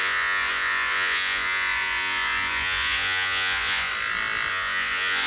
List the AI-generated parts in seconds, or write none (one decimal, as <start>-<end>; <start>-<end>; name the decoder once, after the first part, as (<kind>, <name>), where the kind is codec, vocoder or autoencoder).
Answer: 0.0-3.9 (vocoder, Vocos); 4.5-5.3